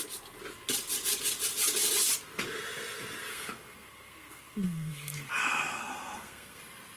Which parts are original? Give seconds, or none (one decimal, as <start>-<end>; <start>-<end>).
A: 0.0-3.3; 6.6-7.0